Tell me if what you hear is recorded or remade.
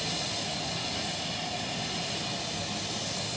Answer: recorded